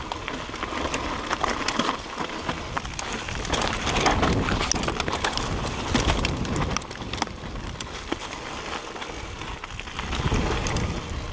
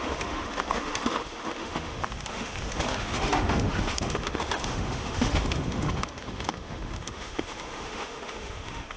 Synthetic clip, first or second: second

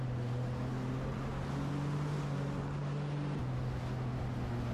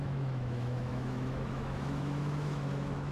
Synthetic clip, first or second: second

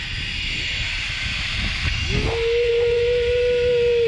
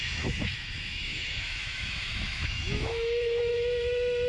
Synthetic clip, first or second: second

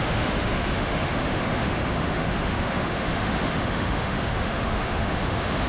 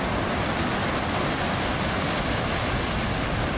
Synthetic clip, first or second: first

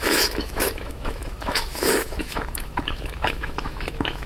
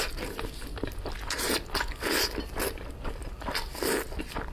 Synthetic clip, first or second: first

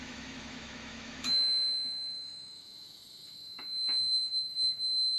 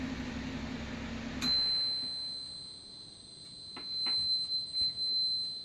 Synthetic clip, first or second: first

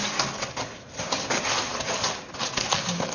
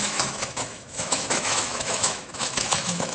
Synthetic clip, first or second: second